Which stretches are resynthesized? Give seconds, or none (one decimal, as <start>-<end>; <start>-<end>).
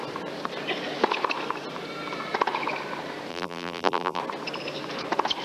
3.3-4.2